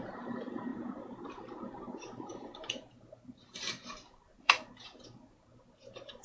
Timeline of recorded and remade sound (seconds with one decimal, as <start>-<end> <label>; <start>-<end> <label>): 0.0-5.5 remade; 5.5-6.2 recorded